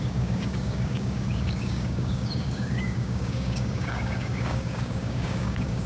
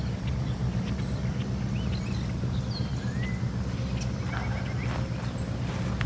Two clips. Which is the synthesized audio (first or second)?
first